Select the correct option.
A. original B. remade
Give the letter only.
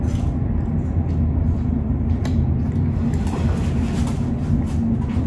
A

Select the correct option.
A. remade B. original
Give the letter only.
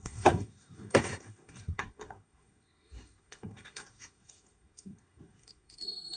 A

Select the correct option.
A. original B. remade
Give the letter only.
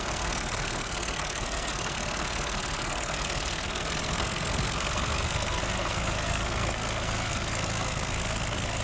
B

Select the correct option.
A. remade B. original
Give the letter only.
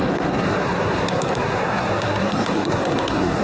A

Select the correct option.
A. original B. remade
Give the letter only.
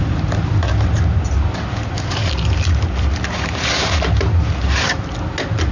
A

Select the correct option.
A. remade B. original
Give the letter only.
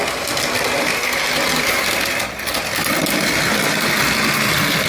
B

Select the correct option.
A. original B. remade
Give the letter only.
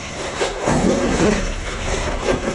B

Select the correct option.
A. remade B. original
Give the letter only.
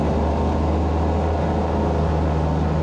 B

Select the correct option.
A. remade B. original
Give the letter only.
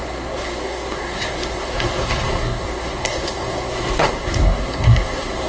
A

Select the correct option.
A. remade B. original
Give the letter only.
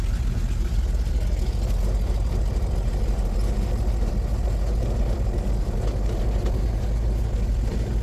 B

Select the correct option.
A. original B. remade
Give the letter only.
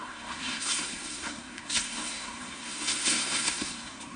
B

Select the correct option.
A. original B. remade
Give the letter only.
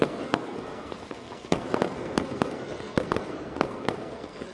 B